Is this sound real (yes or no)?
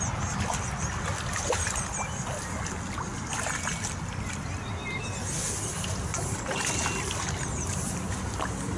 yes